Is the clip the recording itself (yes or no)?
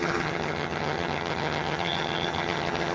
no